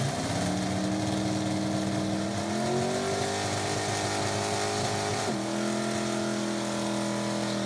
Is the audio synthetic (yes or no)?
no